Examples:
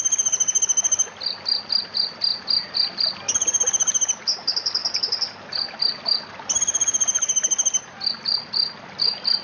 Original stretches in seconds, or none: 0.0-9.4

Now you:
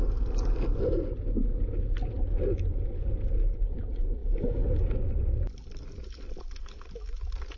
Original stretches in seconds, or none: 0.0-1.5; 2.2-7.6

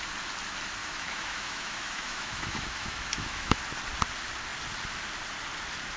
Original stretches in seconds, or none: 0.0-0.8; 3.6-6.0

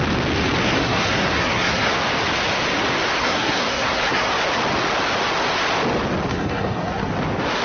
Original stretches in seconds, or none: 0.0-0.6; 1.9-3.2; 4.3-6.3; 7.1-7.6